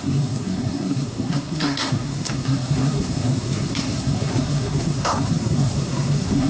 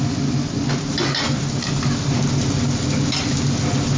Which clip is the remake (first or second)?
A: first